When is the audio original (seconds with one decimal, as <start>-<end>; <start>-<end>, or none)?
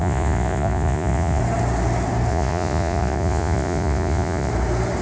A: 1.4-2.3; 4.5-5.0